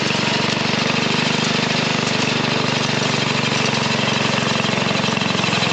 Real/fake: real